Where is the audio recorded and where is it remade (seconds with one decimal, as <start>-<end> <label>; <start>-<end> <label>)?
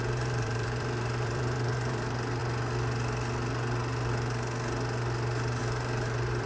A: 0.0-2.4 remade; 2.4-5.6 recorded; 5.6-6.5 remade